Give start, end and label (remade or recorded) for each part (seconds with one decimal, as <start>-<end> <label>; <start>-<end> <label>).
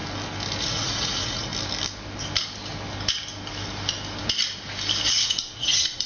0.0-0.6 recorded; 0.6-1.5 remade; 1.5-5.1 recorded; 5.1-6.1 remade